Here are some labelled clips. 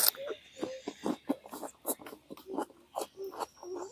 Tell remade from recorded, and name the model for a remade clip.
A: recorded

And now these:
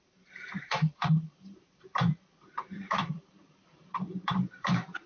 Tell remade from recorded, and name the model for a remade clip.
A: remade, vocoder, BigVGAN v2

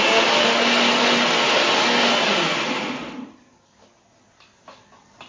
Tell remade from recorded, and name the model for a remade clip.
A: recorded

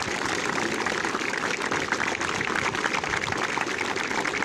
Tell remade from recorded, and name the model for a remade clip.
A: remade, vocoder, BigVGAN v2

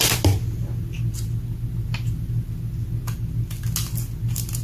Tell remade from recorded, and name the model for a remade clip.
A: recorded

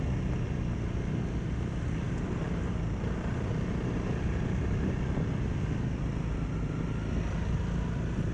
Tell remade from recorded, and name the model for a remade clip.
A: recorded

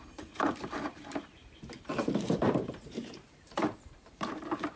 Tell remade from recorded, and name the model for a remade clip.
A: remade, vocoder, BigVGAN v2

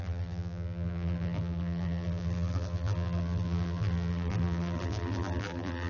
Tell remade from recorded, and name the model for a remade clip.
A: remade, vocoder, BigVGAN v2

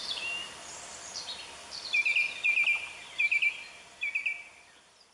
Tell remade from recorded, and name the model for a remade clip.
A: remade, vocoder, BigVGAN v2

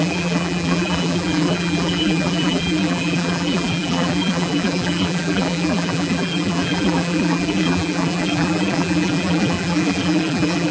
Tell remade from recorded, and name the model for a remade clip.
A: remade, vocoder, BigVGAN v2